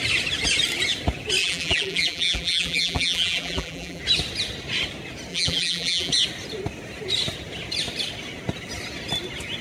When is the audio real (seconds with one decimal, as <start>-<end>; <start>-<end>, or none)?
0.0-1.4; 4.0-5.3; 6.1-9.6